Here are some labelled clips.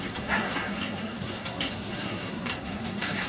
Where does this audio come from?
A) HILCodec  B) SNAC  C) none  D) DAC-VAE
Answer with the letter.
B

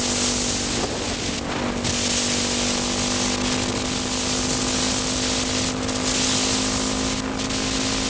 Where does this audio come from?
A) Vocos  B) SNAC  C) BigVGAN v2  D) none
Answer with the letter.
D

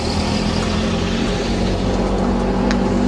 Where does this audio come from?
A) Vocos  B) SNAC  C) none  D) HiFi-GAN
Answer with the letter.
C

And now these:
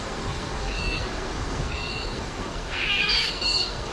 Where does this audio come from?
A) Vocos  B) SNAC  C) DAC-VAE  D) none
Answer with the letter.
B